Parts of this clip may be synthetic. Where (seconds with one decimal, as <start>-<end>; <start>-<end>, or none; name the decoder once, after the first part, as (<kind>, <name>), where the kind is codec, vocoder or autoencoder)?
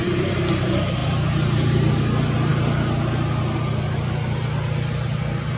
none